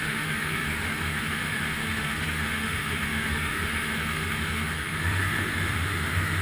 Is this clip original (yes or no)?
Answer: no